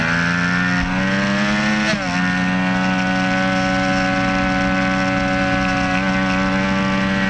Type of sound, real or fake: real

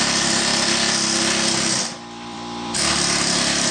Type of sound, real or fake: fake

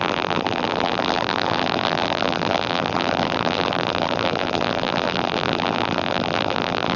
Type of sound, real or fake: fake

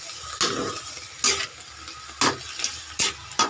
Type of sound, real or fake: real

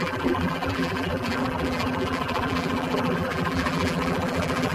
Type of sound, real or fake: fake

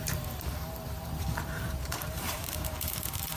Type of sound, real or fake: fake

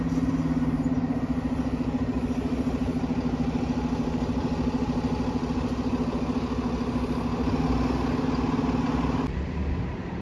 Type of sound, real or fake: real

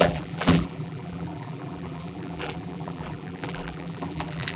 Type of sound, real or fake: fake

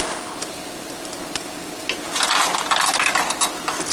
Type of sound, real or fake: real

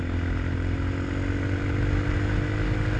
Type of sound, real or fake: real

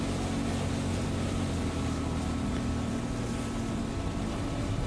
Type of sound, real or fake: real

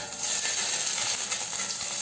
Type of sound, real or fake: real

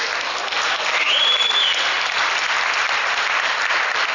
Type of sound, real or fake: real